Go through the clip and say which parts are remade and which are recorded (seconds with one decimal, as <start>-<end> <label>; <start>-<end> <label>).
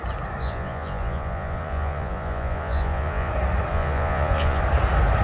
0.0-0.4 recorded; 0.4-3.3 remade; 3.3-3.7 recorded; 3.7-4.6 remade; 4.6-5.2 recorded